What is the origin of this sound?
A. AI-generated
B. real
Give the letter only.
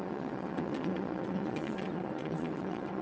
A